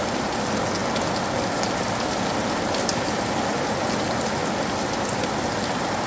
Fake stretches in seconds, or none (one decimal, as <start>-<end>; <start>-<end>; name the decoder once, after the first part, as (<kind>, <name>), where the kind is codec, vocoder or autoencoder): none